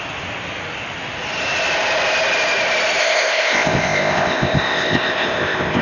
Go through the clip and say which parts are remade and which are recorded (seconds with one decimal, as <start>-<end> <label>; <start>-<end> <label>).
0.0-3.0 recorded; 3.0-5.8 remade